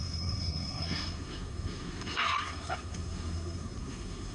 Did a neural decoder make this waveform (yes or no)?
yes